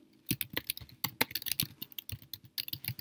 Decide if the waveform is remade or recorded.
recorded